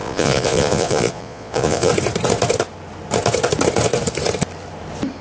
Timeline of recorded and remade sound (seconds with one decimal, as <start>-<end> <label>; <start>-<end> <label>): 0.0-1.9 remade; 1.9-5.2 recorded